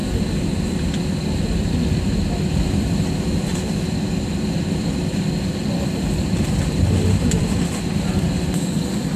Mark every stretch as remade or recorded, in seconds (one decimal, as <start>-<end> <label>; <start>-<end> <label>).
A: 0.0-2.0 remade; 2.0-3.5 recorded; 3.5-8.1 remade; 8.1-9.2 recorded